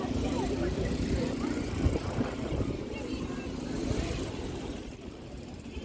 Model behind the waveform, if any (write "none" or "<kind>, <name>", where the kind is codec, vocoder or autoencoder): vocoder, BigVGAN v2